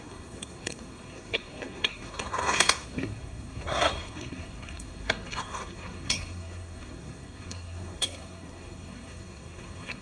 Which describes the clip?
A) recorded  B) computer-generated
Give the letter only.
B